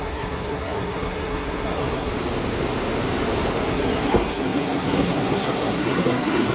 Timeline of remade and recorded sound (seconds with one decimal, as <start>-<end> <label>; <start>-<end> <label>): 0.0-2.1 remade; 2.1-3.7 recorded; 3.7-6.5 remade